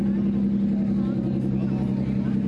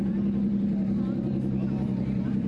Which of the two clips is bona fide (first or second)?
first